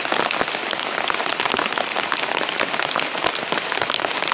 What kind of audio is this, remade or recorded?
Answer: recorded